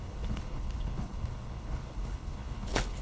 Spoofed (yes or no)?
yes